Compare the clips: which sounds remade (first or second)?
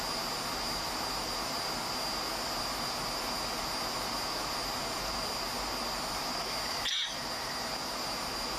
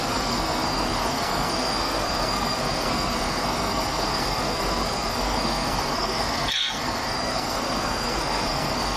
second